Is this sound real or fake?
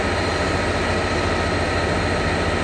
real